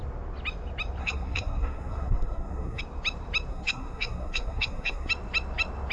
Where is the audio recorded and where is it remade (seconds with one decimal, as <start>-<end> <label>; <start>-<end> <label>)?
0.0-1.0 recorded; 1.0-2.8 remade; 2.8-3.5 recorded; 3.5-5.1 remade; 5.1-5.9 recorded